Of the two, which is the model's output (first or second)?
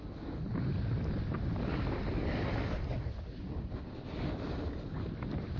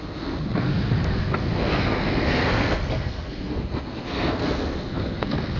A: second